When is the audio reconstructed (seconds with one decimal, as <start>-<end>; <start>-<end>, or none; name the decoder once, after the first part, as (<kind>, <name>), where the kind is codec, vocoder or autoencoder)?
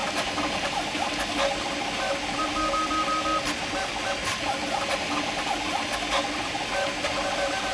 none